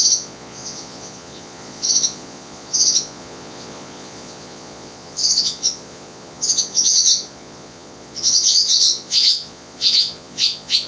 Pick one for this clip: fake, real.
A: fake